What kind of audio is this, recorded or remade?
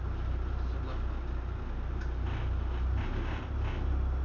recorded